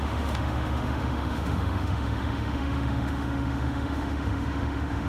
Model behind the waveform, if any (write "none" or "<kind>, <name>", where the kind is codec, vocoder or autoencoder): autoencoder, DAC-VAE